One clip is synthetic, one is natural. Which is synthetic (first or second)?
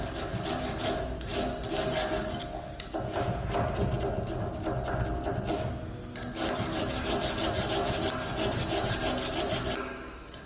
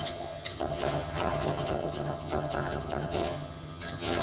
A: second